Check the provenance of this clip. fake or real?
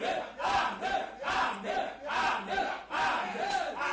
real